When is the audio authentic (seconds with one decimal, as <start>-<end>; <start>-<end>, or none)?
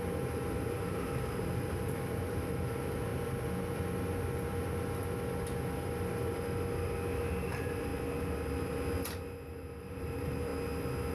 3.1-7.5; 7.9-9.5; 10.5-11.1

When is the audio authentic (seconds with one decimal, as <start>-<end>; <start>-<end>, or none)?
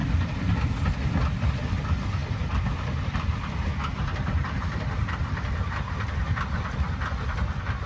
1.7-2.2; 5.7-7.9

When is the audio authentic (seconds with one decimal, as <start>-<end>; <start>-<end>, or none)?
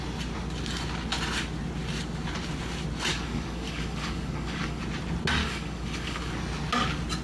0.0-3.1; 4.8-5.4; 6.3-7.2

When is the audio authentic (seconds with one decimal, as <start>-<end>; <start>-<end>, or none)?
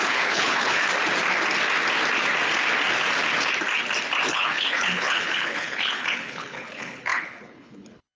0.9-4.3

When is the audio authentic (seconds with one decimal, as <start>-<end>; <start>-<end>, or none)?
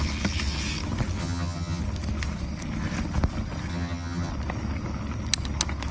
0.0-1.2; 1.8-3.7; 4.3-5.9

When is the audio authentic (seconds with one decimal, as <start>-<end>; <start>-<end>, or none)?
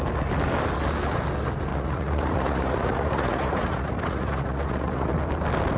0.0-1.7; 5.2-5.8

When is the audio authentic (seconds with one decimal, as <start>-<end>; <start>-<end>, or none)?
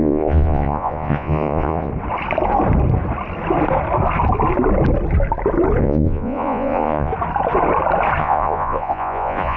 1.9-5.8; 7.1-8.2